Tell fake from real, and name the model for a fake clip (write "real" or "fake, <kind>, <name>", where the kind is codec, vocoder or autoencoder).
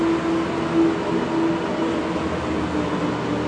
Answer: real